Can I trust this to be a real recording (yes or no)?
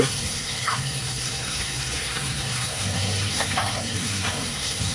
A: no